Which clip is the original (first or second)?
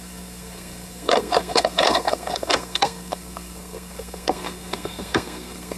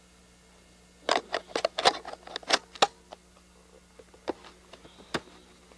second